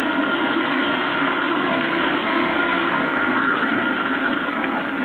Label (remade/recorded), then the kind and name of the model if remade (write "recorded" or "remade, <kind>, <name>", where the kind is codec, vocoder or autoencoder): remade, codec, SNAC